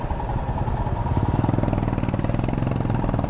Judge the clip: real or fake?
real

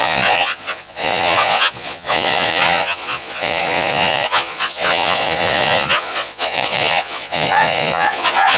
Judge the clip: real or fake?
fake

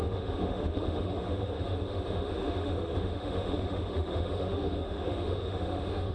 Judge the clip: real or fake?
fake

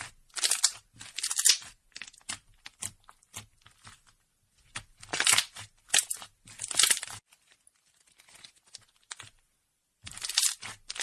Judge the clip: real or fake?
real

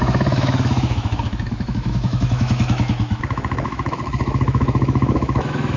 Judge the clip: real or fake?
fake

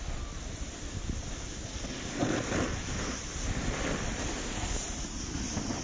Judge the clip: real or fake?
real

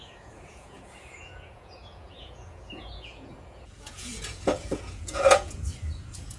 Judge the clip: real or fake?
fake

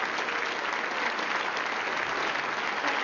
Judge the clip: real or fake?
real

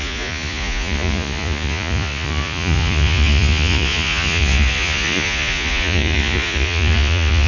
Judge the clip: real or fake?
fake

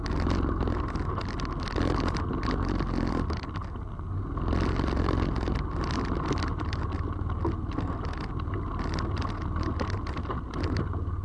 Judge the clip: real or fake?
real